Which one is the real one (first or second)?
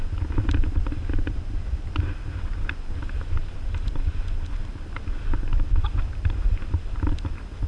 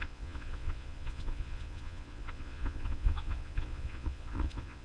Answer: first